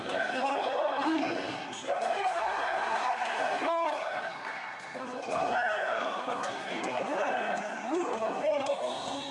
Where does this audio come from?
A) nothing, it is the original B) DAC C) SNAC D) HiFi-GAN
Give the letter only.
C